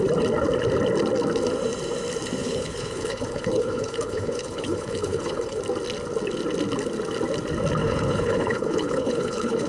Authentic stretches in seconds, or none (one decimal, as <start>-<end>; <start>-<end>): 0.0-2.4; 5.6-7.8